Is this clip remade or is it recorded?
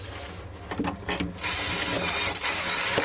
recorded